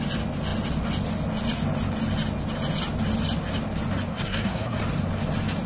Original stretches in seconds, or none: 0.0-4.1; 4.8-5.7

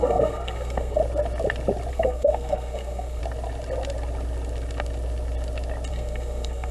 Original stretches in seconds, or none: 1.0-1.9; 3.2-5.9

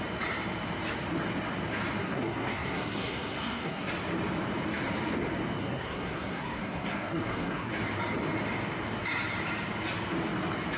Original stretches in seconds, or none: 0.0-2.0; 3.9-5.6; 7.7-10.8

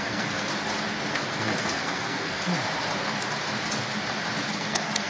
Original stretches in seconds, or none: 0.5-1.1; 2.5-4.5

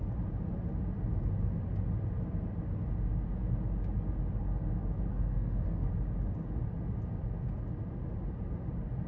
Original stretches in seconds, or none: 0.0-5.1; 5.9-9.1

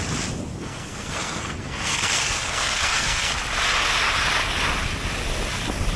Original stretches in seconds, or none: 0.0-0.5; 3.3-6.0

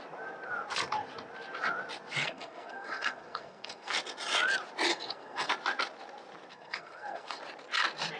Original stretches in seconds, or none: 0.0-2.2; 3.9-4.9; 5.5-6.5; 7.4-8.2